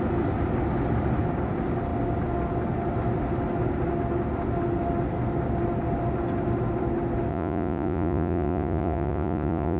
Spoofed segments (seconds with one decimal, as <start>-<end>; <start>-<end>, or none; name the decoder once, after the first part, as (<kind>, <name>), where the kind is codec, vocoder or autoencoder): 7.3-9.8 (vocoder, Vocos)